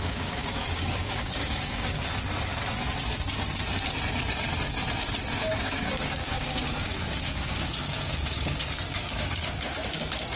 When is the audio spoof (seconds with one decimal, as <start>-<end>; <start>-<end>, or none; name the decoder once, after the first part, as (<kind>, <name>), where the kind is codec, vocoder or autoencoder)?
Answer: 0.0-2.1 (codec, DAC); 5.4-10.4